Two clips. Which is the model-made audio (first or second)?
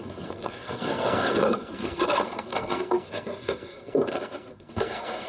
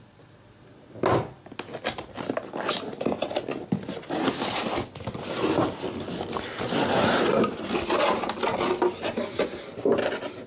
first